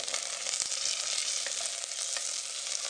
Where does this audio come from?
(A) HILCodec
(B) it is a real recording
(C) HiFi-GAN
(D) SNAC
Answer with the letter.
B